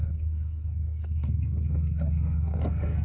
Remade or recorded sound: remade